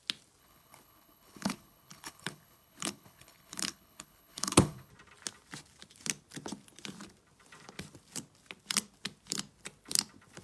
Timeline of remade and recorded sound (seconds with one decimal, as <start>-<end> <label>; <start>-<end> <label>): 0.0-0.4 recorded; 0.4-4.9 remade; 4.9-10.4 recorded